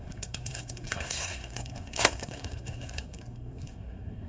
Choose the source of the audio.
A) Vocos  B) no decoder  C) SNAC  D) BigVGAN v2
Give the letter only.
C